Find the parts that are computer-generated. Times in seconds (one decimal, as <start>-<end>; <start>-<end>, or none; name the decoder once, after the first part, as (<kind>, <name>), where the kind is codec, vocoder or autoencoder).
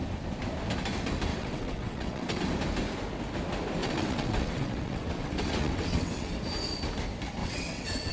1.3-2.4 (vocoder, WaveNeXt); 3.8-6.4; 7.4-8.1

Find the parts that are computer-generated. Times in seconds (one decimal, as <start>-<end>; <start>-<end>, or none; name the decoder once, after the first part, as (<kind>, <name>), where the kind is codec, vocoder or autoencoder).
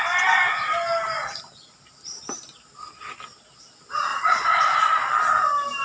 4.1-4.6 (vocoder, Vocos)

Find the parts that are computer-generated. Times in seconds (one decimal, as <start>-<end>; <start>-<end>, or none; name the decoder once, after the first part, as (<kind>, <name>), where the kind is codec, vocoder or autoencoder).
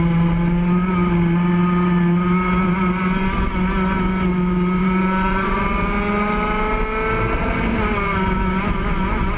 4.8-5.6 (vocoder, Vocos)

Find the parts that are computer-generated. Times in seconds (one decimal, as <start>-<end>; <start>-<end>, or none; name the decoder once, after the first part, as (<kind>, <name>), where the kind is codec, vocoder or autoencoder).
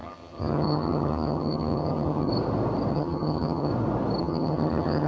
0.0-2.3 (vocoder, HiFi-GAN); 2.9-3.7; 4.2-5.1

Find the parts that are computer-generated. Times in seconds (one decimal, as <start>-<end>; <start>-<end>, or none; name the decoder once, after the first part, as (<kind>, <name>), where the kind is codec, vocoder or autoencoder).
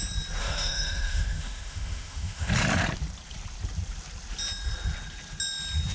0.4-2.5 (autoencoder, DAC-VAE)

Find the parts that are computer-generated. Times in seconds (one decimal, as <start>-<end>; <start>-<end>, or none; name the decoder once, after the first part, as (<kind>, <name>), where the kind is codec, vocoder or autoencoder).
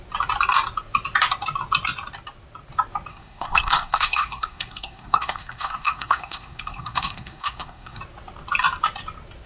3.1-8.0 (codec, SNAC)